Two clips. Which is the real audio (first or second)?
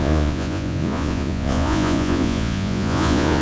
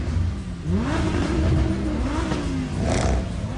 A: second